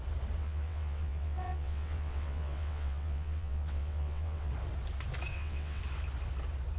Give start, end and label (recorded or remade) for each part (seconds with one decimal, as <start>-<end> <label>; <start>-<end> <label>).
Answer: 0.0-0.4 recorded; 0.4-4.5 remade; 4.5-5.3 recorded; 5.3-5.8 remade; 5.8-6.8 recorded